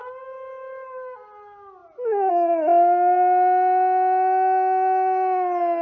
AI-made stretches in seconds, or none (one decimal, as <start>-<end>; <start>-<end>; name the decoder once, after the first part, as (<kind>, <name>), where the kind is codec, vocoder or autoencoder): none